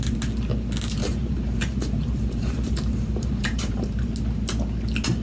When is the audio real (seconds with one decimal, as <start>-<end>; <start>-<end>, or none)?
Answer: 0.0-1.0; 4.1-5.2